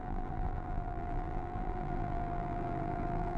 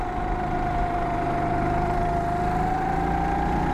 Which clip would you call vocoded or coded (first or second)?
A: first